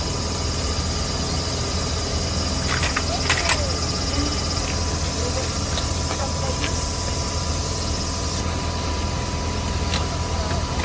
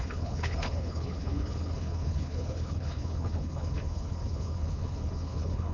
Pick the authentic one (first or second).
first